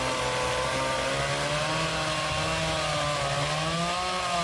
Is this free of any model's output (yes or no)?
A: yes